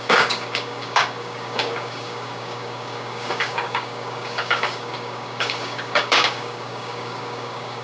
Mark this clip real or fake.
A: fake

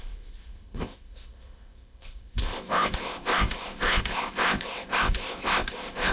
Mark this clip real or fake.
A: fake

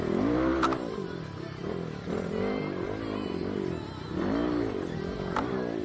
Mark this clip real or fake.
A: real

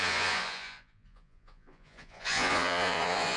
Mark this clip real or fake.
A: fake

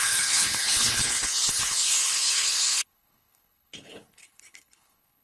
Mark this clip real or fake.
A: fake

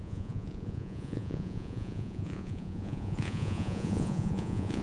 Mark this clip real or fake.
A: fake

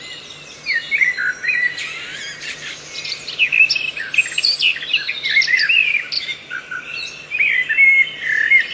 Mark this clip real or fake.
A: real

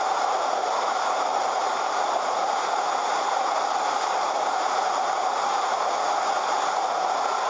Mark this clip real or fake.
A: fake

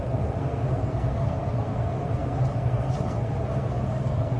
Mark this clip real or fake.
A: fake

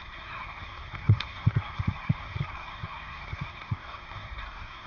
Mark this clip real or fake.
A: fake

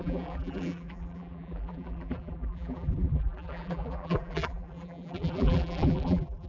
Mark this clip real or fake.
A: fake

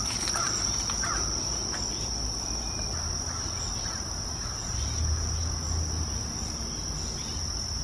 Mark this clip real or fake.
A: real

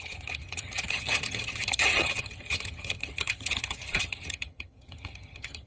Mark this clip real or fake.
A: fake